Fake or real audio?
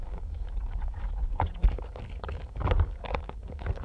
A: fake